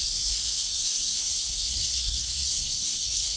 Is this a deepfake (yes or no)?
yes